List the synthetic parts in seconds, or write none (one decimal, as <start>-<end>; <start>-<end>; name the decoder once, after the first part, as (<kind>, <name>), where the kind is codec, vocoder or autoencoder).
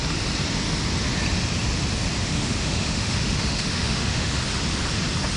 2.2-4.4 (autoencoder, DAC-VAE)